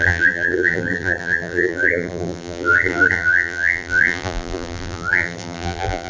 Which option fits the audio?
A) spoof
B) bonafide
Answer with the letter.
A